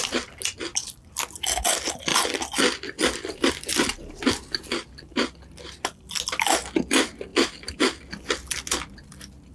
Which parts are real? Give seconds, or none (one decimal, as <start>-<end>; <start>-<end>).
0.0-9.5